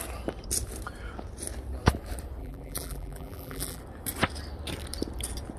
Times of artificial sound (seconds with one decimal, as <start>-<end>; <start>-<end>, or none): 2.4-3.8